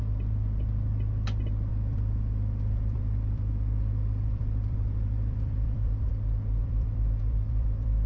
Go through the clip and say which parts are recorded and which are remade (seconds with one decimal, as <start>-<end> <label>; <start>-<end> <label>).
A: 0.0-1.7 recorded; 1.7-6.1 remade; 6.1-6.6 recorded; 6.6-8.1 remade